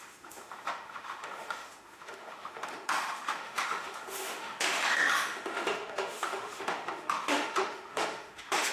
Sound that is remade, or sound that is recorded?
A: remade